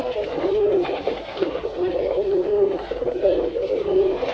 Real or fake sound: fake